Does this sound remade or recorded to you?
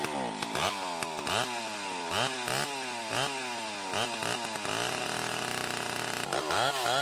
recorded